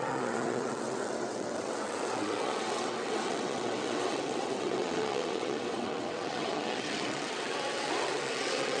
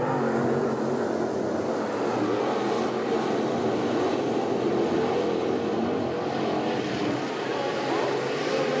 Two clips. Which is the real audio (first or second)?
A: second